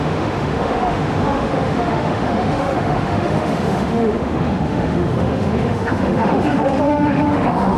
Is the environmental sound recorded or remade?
remade